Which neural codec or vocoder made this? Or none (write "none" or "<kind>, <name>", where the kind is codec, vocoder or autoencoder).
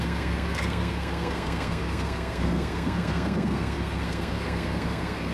codec, SNAC